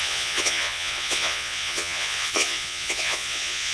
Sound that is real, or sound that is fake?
fake